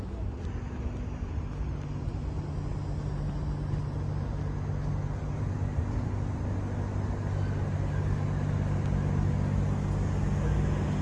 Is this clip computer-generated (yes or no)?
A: no